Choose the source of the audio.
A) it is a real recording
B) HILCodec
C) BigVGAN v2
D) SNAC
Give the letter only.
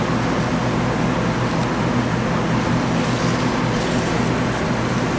A